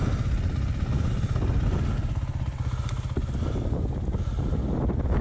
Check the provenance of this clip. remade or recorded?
recorded